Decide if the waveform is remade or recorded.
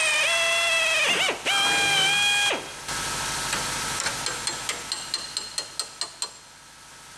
recorded